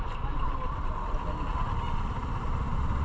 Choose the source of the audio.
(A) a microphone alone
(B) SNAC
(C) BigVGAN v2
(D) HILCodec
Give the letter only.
A